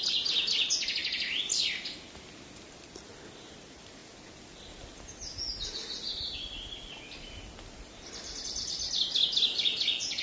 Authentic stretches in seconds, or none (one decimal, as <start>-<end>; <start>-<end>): 0.0-10.2